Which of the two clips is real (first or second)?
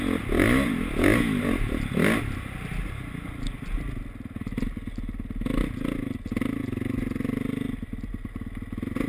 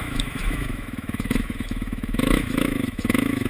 first